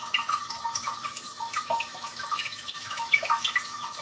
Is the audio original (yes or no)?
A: no